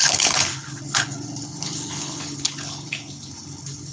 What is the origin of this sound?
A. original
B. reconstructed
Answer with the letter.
B